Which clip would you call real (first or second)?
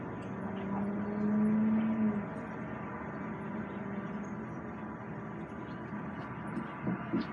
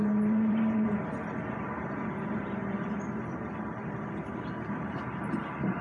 first